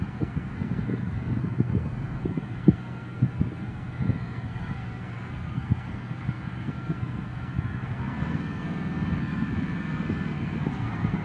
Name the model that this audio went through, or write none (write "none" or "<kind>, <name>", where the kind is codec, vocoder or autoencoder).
codec, SNAC